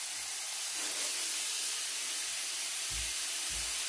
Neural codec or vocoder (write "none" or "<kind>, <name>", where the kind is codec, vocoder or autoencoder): none